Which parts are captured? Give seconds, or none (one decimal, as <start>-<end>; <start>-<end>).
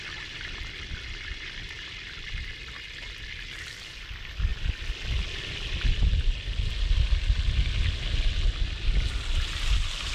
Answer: 0.0-10.1